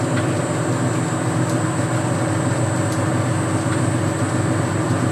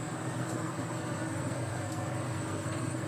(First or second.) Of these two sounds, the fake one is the second